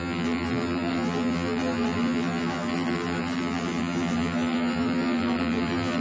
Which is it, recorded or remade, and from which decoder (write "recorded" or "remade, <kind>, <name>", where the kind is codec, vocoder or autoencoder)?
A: remade, vocoder, BigVGAN v2